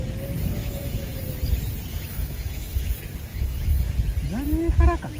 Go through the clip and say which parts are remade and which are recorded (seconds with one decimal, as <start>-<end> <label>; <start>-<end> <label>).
0.0-0.6 recorded; 0.6-1.2 remade; 1.2-1.9 recorded; 1.9-2.9 remade; 2.9-3.3 recorded; 3.3-3.9 remade; 3.9-5.2 recorded